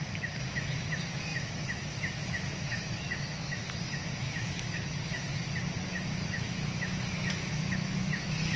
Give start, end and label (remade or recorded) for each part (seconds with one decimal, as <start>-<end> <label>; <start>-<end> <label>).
0.0-5.3 remade; 5.3-5.9 recorded; 5.9-8.6 remade